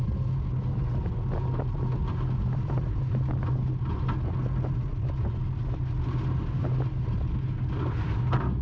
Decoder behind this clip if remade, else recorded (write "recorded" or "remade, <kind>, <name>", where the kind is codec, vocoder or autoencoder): recorded